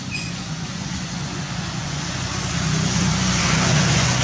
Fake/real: fake